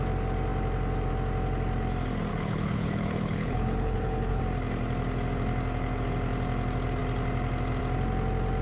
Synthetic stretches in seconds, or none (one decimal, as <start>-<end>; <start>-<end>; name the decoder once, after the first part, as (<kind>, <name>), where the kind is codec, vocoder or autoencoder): 2.3-4.4 (codec, HILCodec)